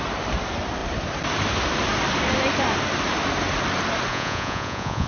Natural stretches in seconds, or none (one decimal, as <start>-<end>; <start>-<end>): 0.0-4.1